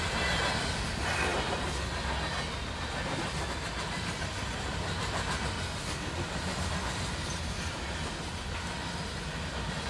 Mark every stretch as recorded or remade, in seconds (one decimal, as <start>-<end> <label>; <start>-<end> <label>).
0.0-9.9 recorded